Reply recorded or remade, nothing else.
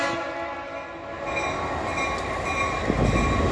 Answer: recorded